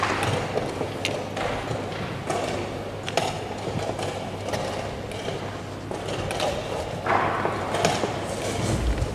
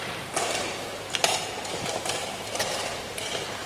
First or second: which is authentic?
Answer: first